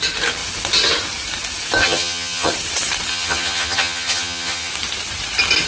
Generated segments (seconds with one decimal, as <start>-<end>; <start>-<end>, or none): 1.8-2.5; 3.1-4.7